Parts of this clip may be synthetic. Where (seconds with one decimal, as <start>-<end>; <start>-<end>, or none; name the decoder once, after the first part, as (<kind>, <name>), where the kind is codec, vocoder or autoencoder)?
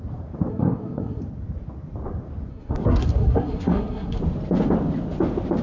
0.5-1.2 (codec, SNAC); 2.5-4.2